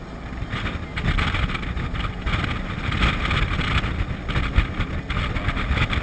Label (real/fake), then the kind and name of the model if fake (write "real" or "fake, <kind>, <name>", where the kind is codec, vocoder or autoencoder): real